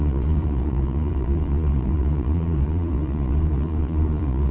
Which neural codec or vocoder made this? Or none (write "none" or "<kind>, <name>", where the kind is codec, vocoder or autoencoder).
vocoder, Vocos